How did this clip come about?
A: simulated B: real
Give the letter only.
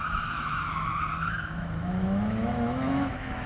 A